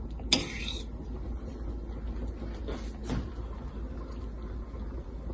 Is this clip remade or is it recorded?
recorded